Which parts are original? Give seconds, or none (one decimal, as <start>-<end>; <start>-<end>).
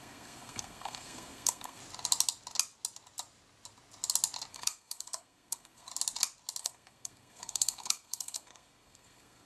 1.8-4.5; 5.9-6.6